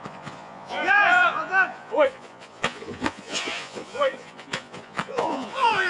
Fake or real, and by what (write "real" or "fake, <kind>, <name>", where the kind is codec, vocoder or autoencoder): fake, vocoder, Vocos